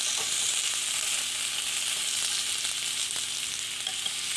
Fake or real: real